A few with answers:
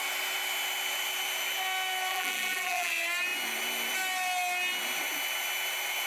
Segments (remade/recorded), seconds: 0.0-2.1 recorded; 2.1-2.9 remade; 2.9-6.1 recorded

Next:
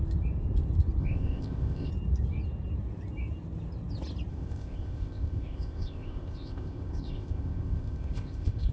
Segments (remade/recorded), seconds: 0.0-1.0 recorded; 1.0-1.9 remade; 1.9-4.3 recorded; 4.3-8.7 remade

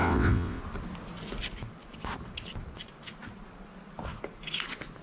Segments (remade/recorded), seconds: 0.0-0.6 remade; 0.6-5.0 recorded